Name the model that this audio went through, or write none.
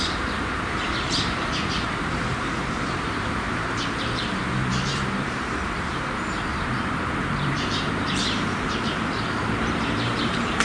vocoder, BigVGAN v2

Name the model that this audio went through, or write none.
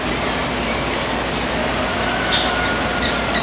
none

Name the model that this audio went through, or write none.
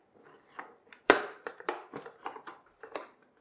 vocoder, BigVGAN v2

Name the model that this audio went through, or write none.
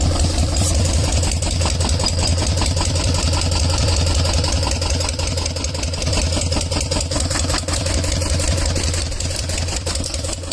vocoder, BigVGAN v2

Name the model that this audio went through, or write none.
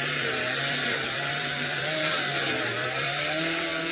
vocoder, BigVGAN v2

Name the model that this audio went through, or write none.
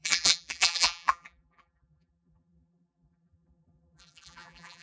vocoder, BigVGAN v2